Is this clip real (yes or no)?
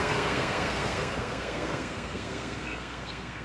no